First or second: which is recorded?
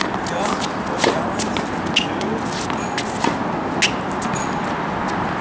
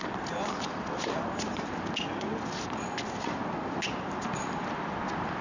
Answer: first